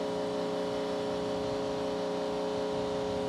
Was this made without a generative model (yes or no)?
yes